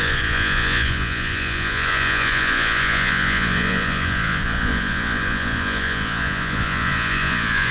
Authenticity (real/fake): fake